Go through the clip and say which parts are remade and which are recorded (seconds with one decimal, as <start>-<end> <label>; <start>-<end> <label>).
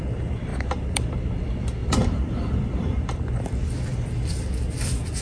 0.0-0.5 recorded; 0.5-1.2 remade; 1.2-1.8 recorded; 1.8-5.2 remade